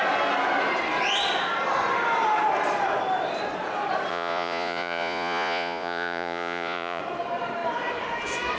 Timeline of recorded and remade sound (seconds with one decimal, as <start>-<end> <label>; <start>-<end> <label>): 0.0-4.1 recorded; 4.1-7.0 remade; 7.0-8.6 recorded